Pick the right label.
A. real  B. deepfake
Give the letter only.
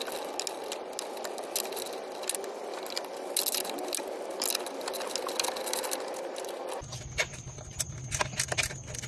A